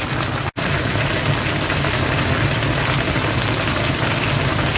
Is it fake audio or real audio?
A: real